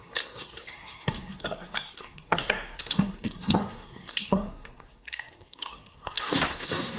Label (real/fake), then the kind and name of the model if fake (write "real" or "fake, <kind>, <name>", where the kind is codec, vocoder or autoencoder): fake, codec, SNAC